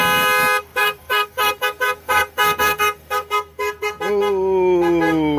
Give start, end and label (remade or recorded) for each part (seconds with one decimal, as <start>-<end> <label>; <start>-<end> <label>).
0.0-0.8 recorded; 0.8-4.0 remade; 4.0-5.4 recorded